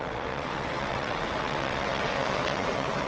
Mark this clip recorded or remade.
remade